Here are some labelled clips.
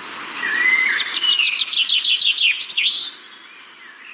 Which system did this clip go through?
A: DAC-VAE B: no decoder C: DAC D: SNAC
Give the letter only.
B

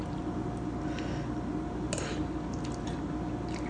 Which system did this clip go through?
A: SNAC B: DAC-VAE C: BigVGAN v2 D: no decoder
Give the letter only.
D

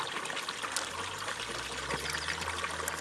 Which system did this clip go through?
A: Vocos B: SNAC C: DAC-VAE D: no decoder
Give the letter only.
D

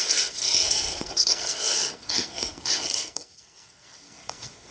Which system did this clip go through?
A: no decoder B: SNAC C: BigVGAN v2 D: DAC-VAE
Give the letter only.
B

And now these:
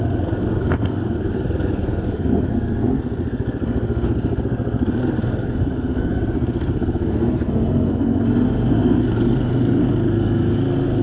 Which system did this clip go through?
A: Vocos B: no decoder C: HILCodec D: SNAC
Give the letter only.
D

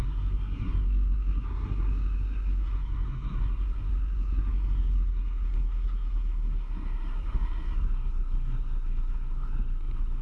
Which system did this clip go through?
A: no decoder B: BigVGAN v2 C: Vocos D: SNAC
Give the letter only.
D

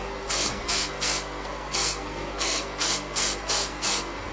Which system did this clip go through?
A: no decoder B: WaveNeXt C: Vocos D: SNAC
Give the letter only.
D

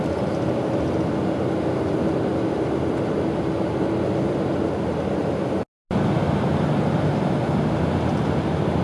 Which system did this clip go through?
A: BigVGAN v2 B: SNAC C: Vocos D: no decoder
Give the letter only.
D